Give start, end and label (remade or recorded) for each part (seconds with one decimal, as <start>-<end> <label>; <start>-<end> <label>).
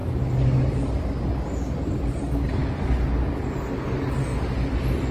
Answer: 0.0-5.1 recorded